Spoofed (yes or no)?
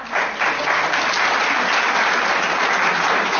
no